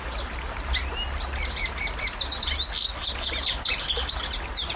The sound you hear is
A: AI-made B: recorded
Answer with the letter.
B